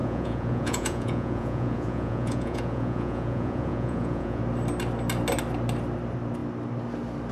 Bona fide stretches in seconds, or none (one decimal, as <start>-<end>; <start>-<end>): 4.4-7.3